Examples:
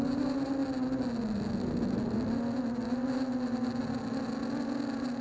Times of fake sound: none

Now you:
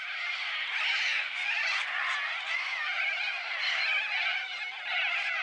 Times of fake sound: 1.1-2.0 (vocoder, Vocos)

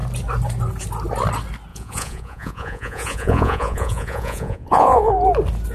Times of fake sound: 1.7-5.1 (vocoder, Vocos)